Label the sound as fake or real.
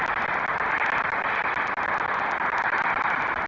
real